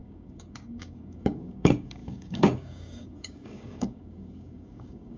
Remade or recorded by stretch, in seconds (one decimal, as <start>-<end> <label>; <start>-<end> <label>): 0.0-5.2 remade